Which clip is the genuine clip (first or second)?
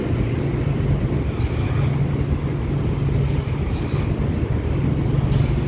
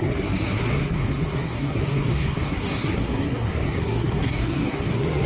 first